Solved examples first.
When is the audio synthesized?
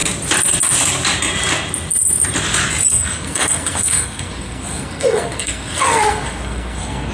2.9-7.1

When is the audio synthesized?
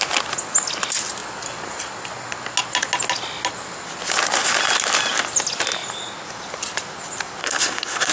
7.4-8.1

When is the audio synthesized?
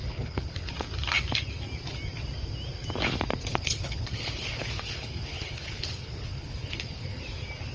0.0-0.7; 3.5-7.2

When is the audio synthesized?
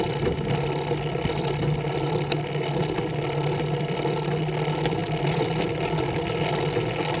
5.0-6.4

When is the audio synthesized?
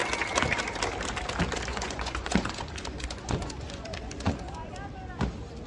1.7-4.7